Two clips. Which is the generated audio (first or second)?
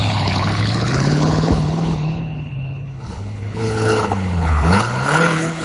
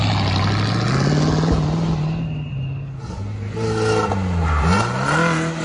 first